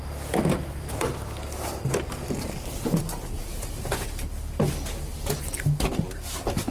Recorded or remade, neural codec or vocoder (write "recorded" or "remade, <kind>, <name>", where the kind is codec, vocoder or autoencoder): recorded